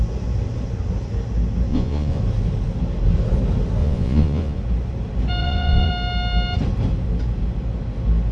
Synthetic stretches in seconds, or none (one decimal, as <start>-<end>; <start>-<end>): 1.7-2.2; 3.8-4.6; 5.4-5.9